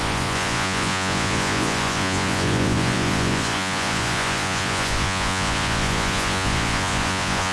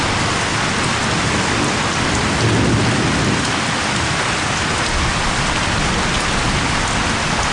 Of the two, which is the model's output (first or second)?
first